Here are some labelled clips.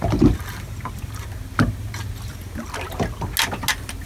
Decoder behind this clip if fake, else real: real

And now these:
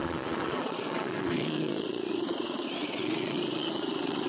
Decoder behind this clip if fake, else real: fake, vocoder, Vocos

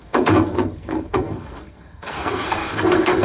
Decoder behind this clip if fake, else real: fake, codec, SNAC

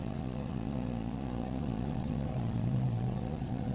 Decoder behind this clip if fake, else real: fake, vocoder, Vocos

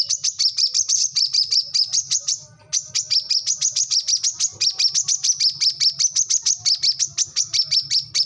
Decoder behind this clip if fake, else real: real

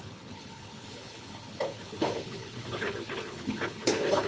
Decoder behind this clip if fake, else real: fake, codec, HILCodec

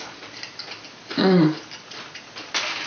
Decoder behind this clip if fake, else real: real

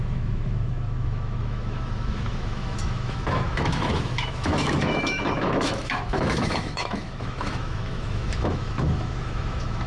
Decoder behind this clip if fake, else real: fake, autoencoder, DAC-VAE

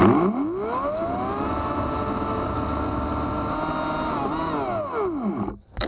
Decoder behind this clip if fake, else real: real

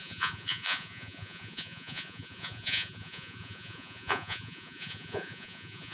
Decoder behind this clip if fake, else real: fake, vocoder, Vocos